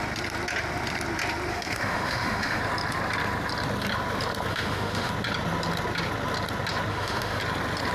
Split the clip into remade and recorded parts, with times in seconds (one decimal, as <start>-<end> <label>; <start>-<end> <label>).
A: 0.0-1.5 recorded; 1.5-2.6 remade; 2.6-4.5 recorded; 4.5-5.1 remade; 5.1-6.9 recorded; 6.9-7.4 remade; 7.4-7.9 recorded